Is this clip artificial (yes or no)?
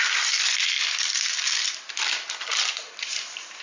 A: yes